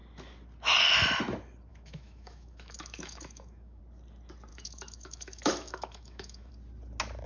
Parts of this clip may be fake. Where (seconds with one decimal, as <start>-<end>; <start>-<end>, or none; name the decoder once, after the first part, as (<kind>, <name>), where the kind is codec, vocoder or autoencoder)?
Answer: 1.7-3.8 (autoencoder, DAC-VAE); 4.5-6.5